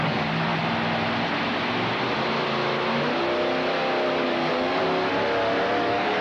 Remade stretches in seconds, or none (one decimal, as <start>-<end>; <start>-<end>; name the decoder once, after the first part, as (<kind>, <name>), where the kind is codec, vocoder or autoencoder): 0.0-0.5 (codec, DAC); 4.2-4.8; 5.8-6.2